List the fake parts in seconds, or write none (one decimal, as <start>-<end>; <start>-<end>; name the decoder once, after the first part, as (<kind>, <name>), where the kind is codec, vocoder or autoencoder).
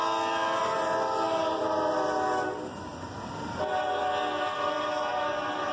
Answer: none